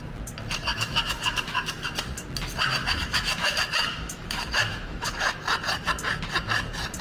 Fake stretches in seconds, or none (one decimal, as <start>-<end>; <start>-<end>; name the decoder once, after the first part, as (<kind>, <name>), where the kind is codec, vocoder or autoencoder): 0.7-1.7 (autoencoder, DAC-VAE); 2.8-5.3